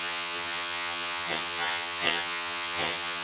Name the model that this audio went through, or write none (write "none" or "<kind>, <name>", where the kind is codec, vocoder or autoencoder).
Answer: vocoder, HiFi-GAN